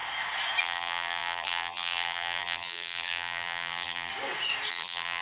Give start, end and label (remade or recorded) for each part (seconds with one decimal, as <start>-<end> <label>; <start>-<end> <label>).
0.0-0.6 recorded; 0.6-4.1 remade; 4.1-4.7 recorded; 4.7-5.2 remade